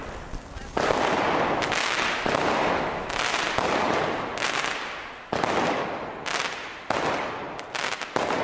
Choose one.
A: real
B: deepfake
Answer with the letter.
A